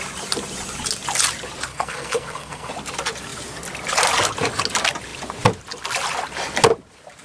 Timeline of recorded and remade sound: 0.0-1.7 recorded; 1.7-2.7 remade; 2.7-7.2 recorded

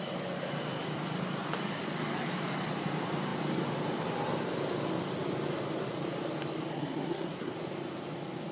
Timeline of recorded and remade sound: 0.0-6.7 recorded; 6.7-7.5 remade; 7.5-8.5 recorded

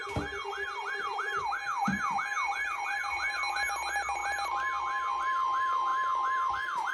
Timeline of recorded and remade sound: 0.0-6.9 recorded

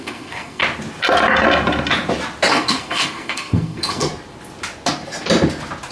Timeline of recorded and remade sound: 0.0-0.6 remade; 0.6-2.5 recorded; 2.5-4.1 remade; 4.1-5.9 recorded

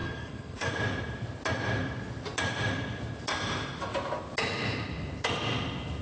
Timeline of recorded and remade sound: 0.0-0.7 remade; 0.7-6.0 recorded